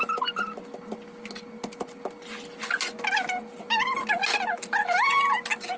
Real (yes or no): yes